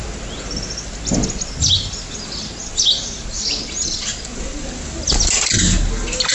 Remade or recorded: recorded